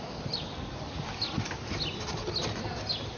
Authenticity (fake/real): real